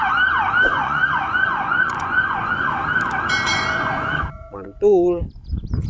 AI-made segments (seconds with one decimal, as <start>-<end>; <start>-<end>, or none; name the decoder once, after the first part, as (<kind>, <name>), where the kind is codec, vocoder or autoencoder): 0.7-2.8 (vocoder, Vocos); 3.5-5.2